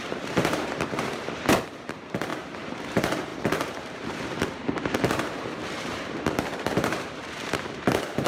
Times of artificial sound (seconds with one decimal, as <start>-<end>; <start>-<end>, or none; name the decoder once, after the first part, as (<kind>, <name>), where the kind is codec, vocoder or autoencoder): 0.0-8.3 (vocoder, BigVGAN v2)